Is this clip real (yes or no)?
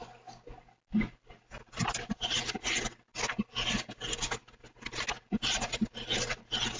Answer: yes